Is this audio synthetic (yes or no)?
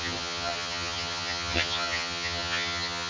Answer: yes